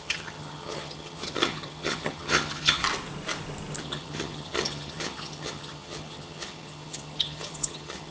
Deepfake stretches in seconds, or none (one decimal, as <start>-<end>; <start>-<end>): 0.0-2.8; 3.8-8.1

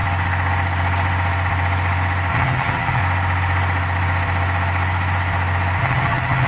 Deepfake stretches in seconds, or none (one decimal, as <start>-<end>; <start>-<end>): 2.3-3.0; 5.8-6.5

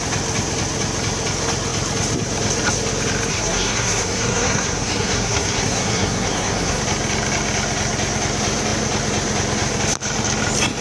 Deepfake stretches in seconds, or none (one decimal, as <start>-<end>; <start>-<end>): 3.3-6.8

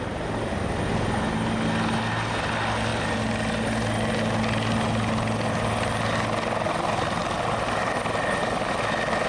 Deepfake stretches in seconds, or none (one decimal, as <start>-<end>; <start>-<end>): none

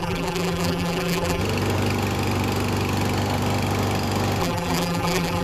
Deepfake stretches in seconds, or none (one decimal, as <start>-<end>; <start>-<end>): 0.0-1.4; 4.4-5.4

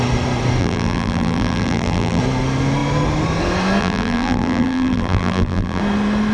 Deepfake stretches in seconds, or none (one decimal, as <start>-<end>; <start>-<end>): 0.6-2.2; 3.8-5.8

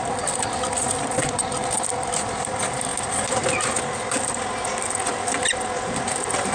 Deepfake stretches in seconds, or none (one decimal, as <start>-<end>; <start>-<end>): none